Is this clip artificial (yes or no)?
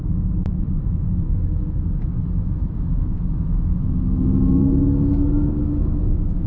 yes